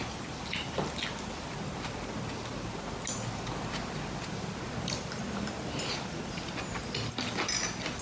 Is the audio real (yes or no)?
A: yes